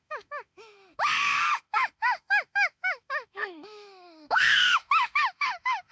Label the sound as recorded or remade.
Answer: remade